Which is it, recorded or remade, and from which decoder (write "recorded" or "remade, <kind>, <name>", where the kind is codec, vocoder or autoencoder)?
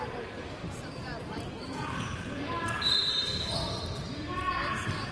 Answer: remade, vocoder, BigVGAN v2